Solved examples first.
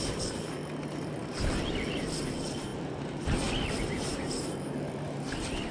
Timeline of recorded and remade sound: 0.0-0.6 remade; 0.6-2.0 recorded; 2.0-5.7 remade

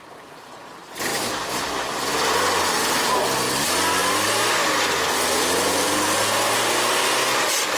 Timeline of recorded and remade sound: 0.0-1.1 recorded; 1.1-2.2 remade; 2.2-7.8 recorded